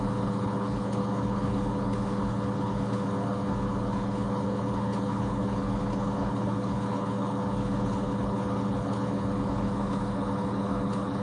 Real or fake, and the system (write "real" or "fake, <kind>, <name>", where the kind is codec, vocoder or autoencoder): fake, codec, HILCodec